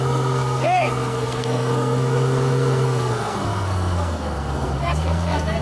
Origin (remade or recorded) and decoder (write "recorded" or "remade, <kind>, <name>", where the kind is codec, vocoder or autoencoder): remade, codec, SNAC